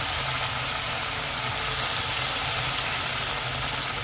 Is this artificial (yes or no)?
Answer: no